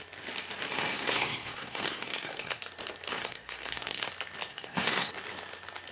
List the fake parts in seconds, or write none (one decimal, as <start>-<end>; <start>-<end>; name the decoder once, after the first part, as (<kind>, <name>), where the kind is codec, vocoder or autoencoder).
0.9-2.6 (codec, SNAC); 3.1-4.1; 4.5-5.1